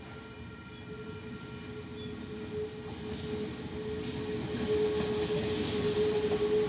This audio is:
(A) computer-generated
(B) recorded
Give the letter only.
B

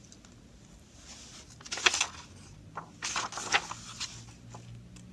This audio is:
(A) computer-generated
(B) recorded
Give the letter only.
B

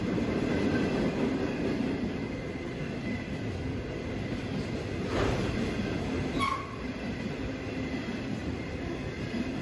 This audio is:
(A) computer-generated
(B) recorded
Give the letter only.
B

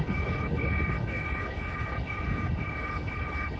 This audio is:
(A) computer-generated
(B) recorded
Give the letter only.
A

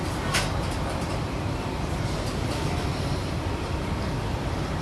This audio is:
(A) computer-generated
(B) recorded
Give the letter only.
A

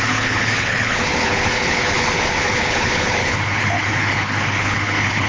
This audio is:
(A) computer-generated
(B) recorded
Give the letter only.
A